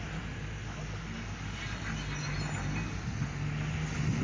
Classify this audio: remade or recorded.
recorded